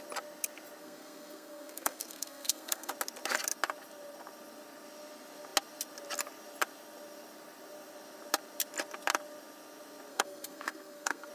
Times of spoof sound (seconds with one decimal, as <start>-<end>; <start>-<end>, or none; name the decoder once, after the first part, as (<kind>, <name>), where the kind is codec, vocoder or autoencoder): 0.8-2.9 (codec, SNAC); 10.1-11.3